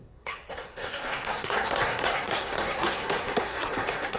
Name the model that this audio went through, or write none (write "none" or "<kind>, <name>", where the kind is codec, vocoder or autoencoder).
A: codec, SNAC